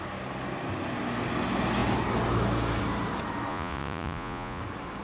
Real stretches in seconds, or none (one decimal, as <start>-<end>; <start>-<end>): 0.0-3.5; 4.6-5.0